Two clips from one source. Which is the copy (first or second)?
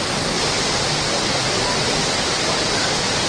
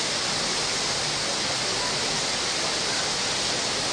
first